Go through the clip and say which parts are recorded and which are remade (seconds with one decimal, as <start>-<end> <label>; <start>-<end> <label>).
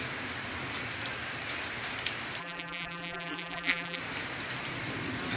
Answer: 0.0-2.4 recorded; 2.4-4.0 remade; 4.0-5.4 recorded